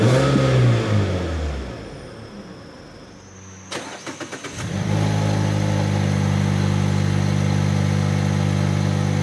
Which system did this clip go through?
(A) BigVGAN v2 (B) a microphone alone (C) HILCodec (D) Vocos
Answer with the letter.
B